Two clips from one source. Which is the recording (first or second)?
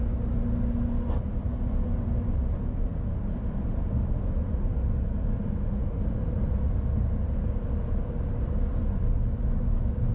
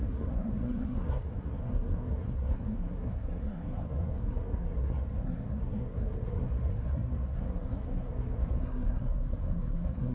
first